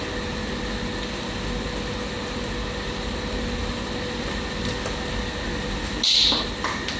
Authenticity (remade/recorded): recorded